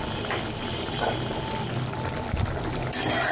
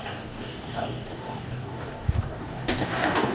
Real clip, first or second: first